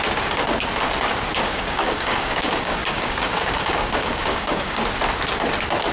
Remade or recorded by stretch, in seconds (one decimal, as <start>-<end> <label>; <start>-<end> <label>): 0.0-1.3 recorded; 1.3-4.8 remade; 4.8-5.9 recorded

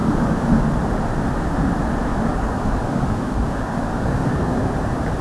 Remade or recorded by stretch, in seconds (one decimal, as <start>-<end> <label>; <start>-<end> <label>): 0.0-0.6 remade; 0.6-2.1 recorded; 2.1-4.7 remade; 4.7-5.2 recorded